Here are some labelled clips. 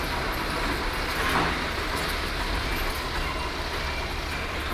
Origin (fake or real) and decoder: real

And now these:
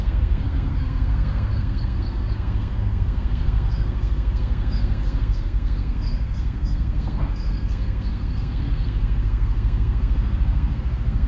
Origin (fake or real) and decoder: fake, codec, SNAC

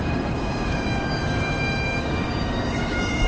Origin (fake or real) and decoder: fake, codec, DAC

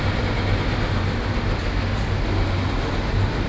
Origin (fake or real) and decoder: real